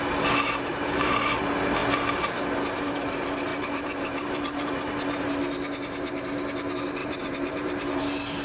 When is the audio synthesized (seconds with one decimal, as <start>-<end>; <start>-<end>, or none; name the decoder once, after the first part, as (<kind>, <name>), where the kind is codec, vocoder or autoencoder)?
0.7-1.4 (vocoder, BigVGAN v2); 3.5-4.9; 7.0-8.0